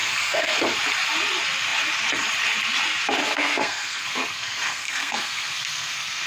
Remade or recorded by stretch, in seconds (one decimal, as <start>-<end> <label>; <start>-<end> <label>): 0.0-0.6 remade; 0.6-3.2 recorded; 3.2-6.3 remade